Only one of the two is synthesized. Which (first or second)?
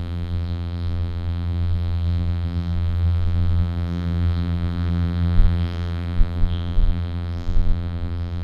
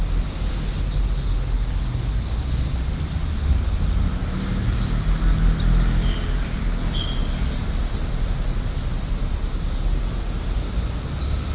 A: first